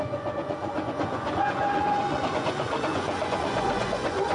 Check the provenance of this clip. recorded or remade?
remade